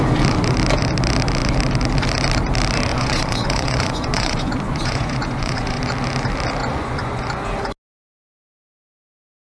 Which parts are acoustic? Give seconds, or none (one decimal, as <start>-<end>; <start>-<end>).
0.0-2.9; 5.8-6.6; 7.2-9.6